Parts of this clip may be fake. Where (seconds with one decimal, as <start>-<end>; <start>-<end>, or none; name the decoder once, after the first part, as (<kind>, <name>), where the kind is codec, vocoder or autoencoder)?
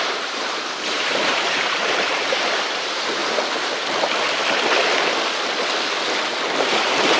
0.0-3.2 (vocoder, BigVGAN v2); 6.6-7.2